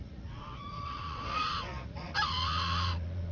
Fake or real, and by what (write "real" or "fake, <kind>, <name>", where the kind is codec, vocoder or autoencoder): fake, vocoder, Vocos